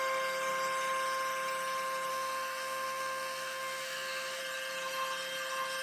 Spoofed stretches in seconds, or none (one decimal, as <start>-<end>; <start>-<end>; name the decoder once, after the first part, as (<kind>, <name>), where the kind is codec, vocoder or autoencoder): 2.1-4.4 (autoencoder, DAC-VAE)